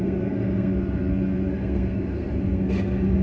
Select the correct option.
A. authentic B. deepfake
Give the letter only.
B